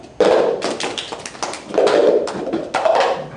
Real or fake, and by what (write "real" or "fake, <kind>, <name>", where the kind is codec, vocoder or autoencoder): real